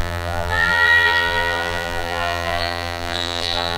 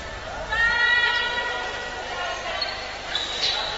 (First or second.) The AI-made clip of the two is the first